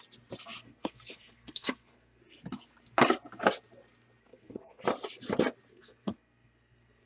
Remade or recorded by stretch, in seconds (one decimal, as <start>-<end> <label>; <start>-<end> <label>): 0.0-0.6 recorded; 0.6-2.2 remade; 2.2-4.2 recorded; 4.2-4.8 remade; 4.8-5.7 recorded; 5.7-7.1 remade